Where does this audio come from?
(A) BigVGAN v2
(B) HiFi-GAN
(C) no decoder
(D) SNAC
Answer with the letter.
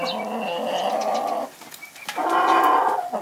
C